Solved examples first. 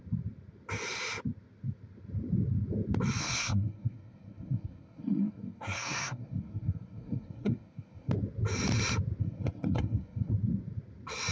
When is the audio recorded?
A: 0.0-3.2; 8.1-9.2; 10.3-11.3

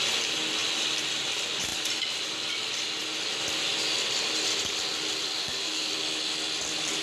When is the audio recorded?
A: 0.0-5.4; 5.9-7.0

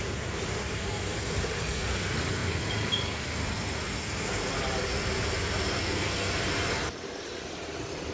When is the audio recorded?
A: 0.0-8.1

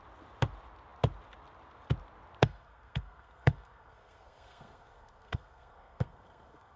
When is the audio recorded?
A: 0.0-2.4

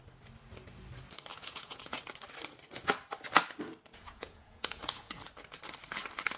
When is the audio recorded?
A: 0.0-1.3; 2.0-3.9; 5.2-6.4